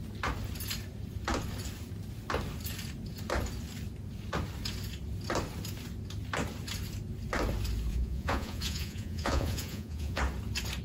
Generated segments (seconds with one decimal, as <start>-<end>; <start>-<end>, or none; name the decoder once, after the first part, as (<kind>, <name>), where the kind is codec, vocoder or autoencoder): 7.9-10.2 (vocoder, Vocos)